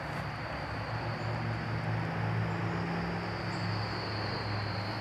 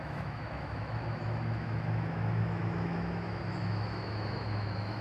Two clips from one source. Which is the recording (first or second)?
first